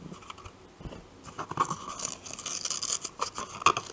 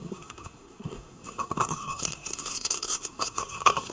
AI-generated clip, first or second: second